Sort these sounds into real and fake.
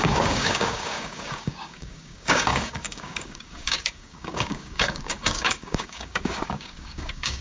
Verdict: fake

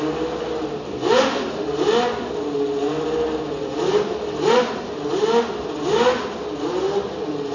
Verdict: real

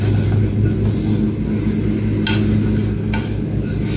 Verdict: real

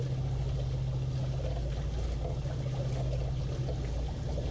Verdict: real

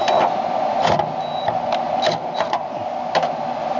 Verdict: real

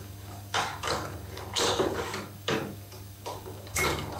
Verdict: fake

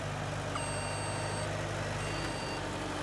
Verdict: real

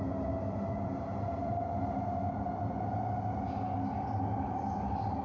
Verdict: real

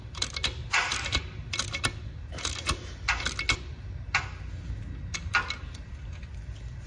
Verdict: real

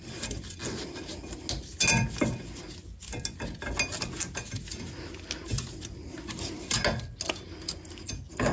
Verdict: real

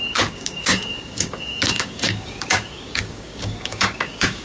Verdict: fake